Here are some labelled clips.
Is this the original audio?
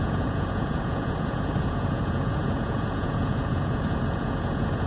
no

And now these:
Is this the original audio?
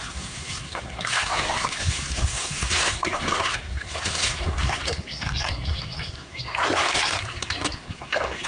no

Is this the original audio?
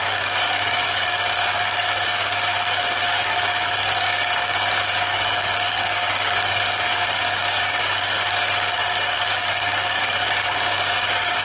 no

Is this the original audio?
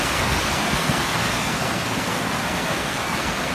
no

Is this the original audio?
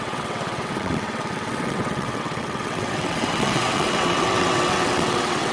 no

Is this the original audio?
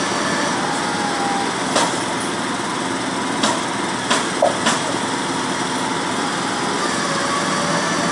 yes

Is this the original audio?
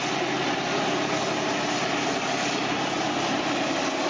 yes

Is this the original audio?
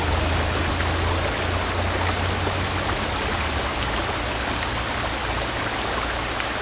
yes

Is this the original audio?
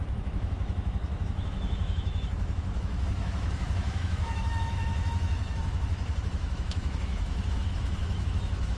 no